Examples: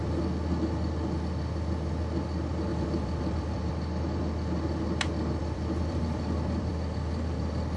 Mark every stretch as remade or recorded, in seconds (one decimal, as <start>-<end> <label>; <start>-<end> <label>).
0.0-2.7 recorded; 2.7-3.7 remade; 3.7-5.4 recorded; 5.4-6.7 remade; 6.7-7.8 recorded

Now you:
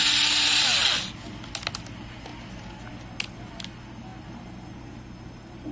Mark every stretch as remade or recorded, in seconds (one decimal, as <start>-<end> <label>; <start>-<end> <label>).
0.0-5.7 recorded

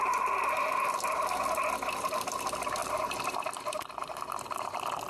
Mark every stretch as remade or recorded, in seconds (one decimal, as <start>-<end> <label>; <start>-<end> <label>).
0.0-2.8 recorded; 2.8-3.4 remade; 3.4-5.1 recorded

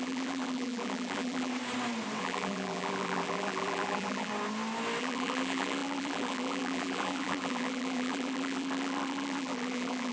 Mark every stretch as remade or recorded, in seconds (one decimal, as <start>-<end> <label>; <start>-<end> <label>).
0.0-1.5 remade; 1.5-2.2 recorded; 2.2-4.3 remade; 4.3-5.0 recorded; 5.0-10.1 remade

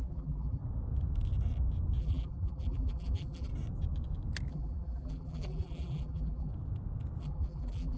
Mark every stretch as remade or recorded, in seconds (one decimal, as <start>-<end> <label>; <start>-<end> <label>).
0.0-0.6 remade; 0.6-2.0 recorded; 2.0-3.5 remade; 3.5-4.5 recorded; 4.5-6.5 remade; 6.5-7.2 recorded; 7.2-8.0 remade

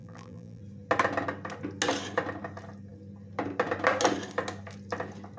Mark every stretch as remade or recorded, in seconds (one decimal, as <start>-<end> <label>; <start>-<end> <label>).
0.0-0.6 remade; 0.6-5.4 recorded

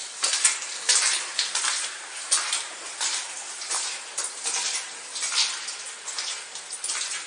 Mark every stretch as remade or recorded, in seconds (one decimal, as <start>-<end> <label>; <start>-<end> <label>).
0.0-4.4 remade; 4.4-7.3 recorded

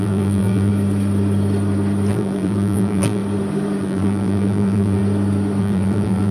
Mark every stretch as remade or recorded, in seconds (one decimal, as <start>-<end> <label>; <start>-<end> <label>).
0.0-0.7 remade; 0.7-2.1 recorded; 2.1-3.2 remade; 3.2-3.8 recorded; 3.8-5.0 remade; 5.0-5.6 recorded; 5.6-6.3 remade